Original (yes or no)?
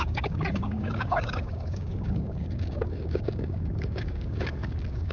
no